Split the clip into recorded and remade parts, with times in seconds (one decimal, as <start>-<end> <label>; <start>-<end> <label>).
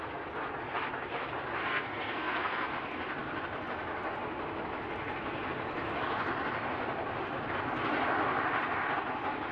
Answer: 0.0-1.6 recorded; 1.6-2.7 remade; 2.7-9.5 recorded